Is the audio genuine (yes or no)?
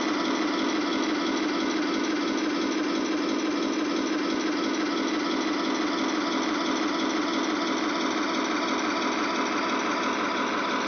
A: yes